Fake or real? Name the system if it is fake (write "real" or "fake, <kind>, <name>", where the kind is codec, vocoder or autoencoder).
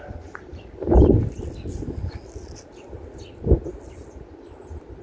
real